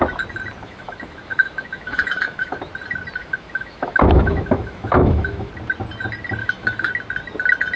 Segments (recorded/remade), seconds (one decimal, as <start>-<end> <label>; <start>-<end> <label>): 0.0-0.6 recorded; 0.6-2.7 remade; 2.7-3.2 recorded; 3.2-5.5 remade; 5.5-6.4 recorded; 6.4-6.9 remade; 6.9-7.8 recorded